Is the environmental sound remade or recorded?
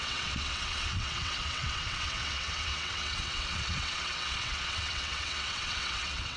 remade